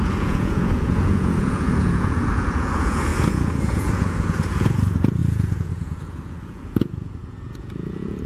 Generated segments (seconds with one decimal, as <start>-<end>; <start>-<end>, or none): 0.0-8.3